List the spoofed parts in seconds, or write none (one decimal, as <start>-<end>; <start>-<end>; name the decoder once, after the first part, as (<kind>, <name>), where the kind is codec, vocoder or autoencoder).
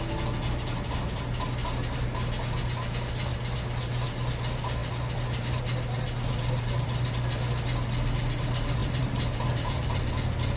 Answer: 8.8-10.1 (vocoder, BigVGAN v2)